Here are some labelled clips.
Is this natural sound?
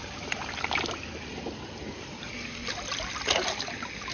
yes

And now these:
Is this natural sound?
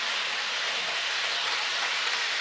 no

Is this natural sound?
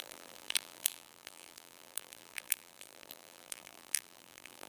no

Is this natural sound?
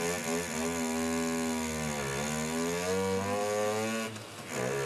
yes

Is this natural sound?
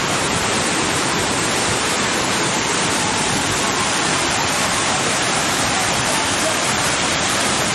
no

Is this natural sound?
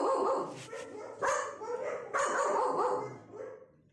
yes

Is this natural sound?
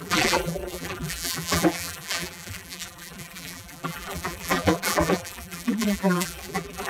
no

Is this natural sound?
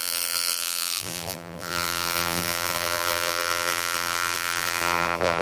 no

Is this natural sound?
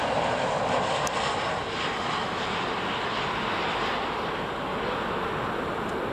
yes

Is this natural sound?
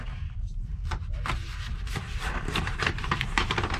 no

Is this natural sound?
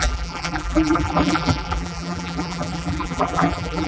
no